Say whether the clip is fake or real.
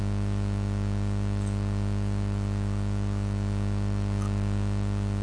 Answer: real